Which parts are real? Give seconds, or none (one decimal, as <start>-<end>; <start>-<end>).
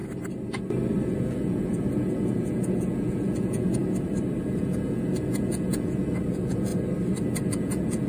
0.0-1.1; 3.8-4.4; 6.7-7.5